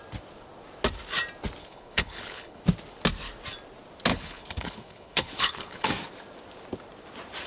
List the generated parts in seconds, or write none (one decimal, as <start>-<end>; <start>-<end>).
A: 1.6-2.6; 4.1-5.9